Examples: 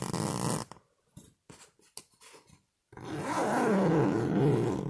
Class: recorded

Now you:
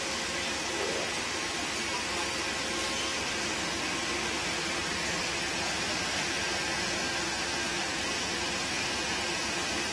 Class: recorded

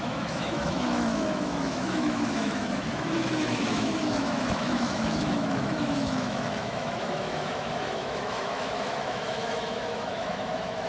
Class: remade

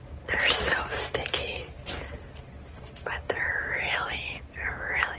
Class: recorded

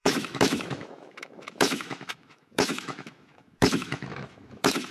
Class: remade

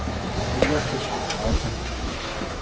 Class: remade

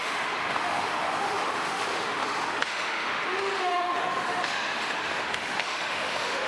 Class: remade